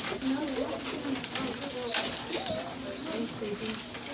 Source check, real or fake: real